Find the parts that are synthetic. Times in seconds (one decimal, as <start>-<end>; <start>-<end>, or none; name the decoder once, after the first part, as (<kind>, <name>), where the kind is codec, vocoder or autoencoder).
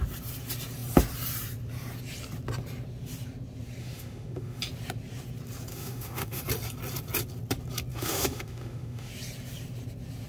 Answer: 3.8-4.6 (autoencoder, DAC-VAE); 5.7-6.4; 7.9-9.1